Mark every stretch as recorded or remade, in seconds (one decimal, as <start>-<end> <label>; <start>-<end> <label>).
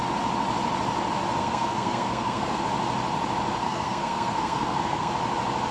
0.0-1.4 recorded; 1.4-2.6 remade; 2.6-3.6 recorded; 3.6-5.1 remade; 5.1-5.7 recorded